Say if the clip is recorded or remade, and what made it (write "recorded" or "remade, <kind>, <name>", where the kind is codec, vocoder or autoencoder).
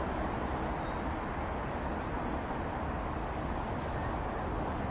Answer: recorded